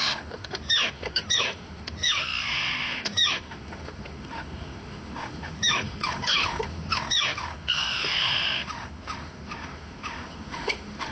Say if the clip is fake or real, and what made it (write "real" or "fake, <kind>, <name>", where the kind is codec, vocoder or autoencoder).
fake, autoencoder, DAC-VAE